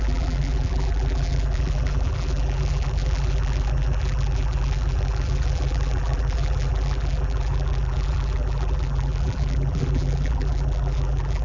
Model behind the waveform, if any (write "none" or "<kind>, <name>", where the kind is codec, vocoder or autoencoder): vocoder, BigVGAN v2